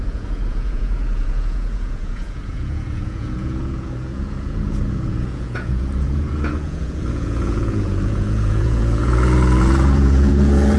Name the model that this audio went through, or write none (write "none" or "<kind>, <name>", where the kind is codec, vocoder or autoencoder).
vocoder, Vocos